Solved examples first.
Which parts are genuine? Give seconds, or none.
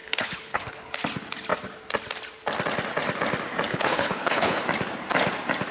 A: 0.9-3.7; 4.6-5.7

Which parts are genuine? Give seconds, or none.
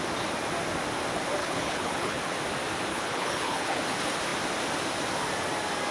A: 0.0-1.4; 2.2-2.9; 3.8-5.9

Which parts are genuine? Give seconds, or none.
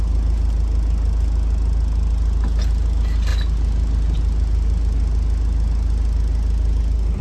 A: 0.0-7.2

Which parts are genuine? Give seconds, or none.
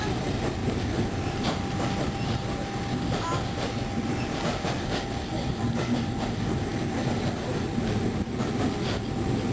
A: 0.0-9.5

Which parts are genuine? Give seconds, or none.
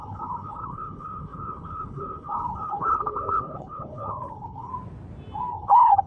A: 4.7-5.5